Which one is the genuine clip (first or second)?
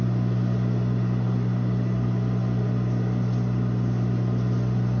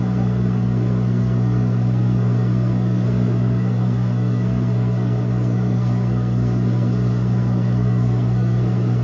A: first